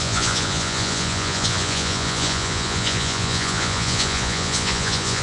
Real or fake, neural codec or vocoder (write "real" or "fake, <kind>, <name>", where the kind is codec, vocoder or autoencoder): fake, vocoder, Vocos